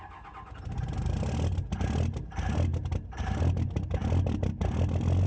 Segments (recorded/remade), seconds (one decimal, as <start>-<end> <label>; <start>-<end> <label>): 0.0-5.3 recorded

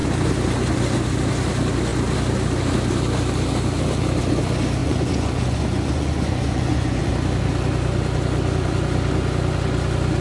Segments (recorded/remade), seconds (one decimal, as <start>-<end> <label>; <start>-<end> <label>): 0.0-4.8 recorded; 4.8-7.1 remade; 7.1-10.2 recorded

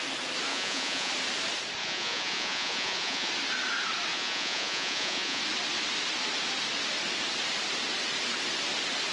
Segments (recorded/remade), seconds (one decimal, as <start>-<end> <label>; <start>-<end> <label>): 0.0-0.5 recorded; 0.5-1.1 remade; 1.1-1.8 recorded; 1.8-3.3 remade; 3.3-4.1 recorded; 4.1-5.4 remade; 5.4-9.1 recorded